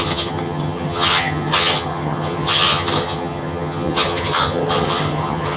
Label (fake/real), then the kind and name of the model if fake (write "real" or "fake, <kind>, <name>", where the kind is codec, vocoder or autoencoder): fake, vocoder, HiFi-GAN